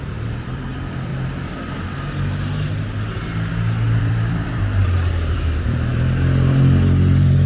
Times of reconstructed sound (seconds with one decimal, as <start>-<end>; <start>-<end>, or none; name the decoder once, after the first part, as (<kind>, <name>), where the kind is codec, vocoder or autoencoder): 0.0-1.1 (vocoder, BigVGAN v2); 4.0-7.5